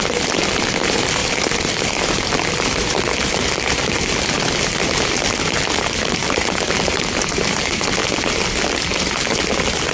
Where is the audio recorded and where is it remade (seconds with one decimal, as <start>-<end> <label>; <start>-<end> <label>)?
0.0-6.2 recorded; 6.2-7.6 remade; 7.6-9.9 recorded